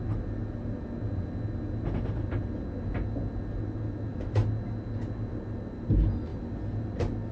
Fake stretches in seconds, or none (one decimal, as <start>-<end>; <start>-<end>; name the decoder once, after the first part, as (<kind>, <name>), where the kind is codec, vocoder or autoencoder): none